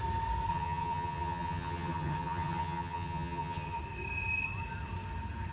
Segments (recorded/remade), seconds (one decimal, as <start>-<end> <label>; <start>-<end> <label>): 0.0-0.5 recorded; 0.5-3.8 remade; 3.8-5.5 recorded